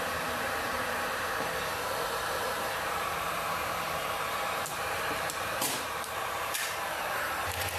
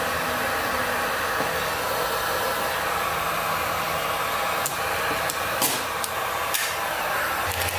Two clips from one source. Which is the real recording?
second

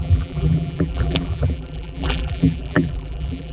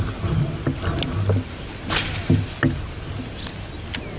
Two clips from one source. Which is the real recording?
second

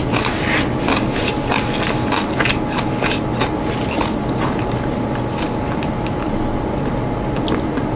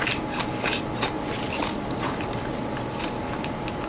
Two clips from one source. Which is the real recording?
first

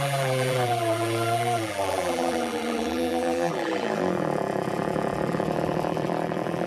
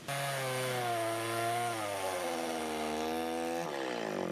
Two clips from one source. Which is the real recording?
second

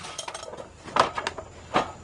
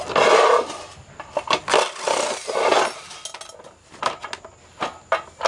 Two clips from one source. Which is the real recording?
second